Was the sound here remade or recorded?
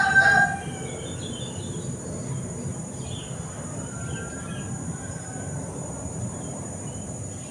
recorded